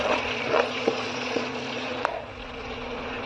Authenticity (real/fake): fake